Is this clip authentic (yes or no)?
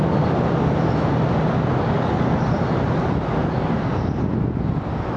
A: yes